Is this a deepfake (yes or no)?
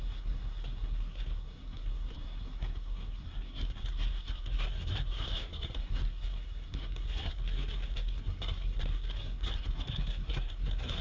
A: yes